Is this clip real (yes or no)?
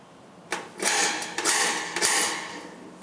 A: yes